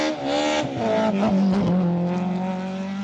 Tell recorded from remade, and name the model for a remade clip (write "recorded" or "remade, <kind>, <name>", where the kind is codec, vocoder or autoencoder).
recorded